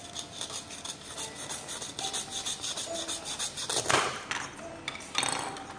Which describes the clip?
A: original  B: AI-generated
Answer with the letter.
B